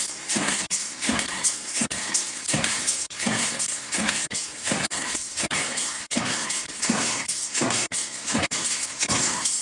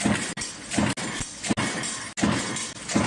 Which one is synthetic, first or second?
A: first